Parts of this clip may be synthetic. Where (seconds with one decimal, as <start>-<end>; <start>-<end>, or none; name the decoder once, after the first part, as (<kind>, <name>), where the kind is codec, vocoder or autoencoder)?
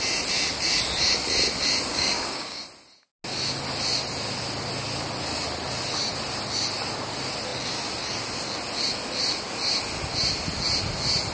1.9-2.6 (codec, DAC)